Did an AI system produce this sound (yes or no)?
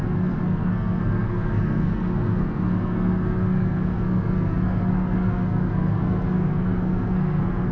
yes